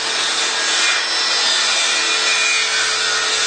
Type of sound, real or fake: real